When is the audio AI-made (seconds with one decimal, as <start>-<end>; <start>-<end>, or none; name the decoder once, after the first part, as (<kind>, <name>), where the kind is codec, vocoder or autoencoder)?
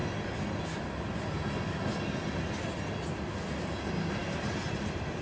none